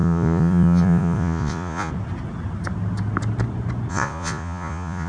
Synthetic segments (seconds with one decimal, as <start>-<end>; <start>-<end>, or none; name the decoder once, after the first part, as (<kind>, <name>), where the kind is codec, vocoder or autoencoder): 0.0-1.9 (vocoder, Vocos); 3.9-5.1